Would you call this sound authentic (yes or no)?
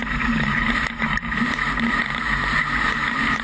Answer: no